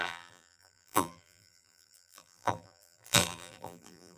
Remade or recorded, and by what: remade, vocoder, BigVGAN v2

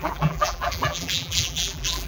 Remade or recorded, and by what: remade, vocoder, BigVGAN v2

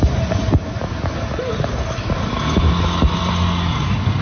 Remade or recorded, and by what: recorded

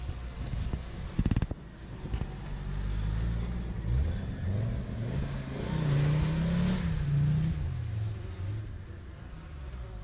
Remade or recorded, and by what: recorded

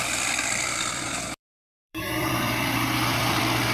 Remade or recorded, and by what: remade, vocoder, BigVGAN v2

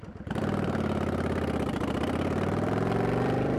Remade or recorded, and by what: remade, vocoder, BigVGAN v2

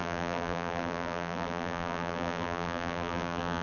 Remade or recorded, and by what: remade, vocoder, BigVGAN v2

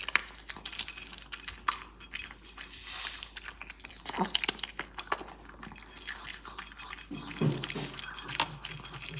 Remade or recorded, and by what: recorded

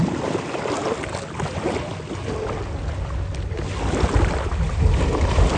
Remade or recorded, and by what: recorded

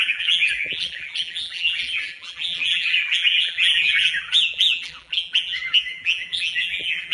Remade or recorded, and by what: remade, vocoder, BigVGAN v2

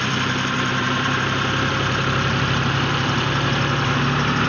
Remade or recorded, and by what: remade, vocoder, BigVGAN v2